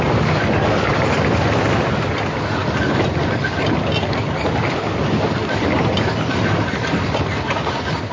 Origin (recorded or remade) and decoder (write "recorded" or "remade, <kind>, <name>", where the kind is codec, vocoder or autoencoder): recorded